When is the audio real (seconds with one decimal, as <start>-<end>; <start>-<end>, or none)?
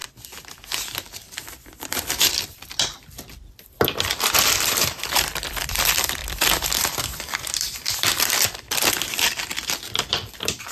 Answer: 0.0-1.8; 9.5-10.1